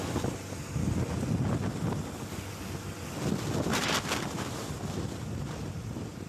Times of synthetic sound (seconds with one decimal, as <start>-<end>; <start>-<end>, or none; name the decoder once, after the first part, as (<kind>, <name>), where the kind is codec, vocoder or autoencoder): 3.8-6.3 (vocoder, BigVGAN v2)